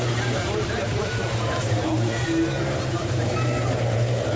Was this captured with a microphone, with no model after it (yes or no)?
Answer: no